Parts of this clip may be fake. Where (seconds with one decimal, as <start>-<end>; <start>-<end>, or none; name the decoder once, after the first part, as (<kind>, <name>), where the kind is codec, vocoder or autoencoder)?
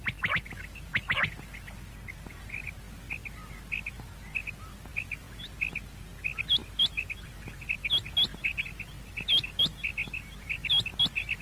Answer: none